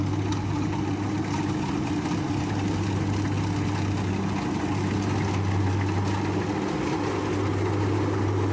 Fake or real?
real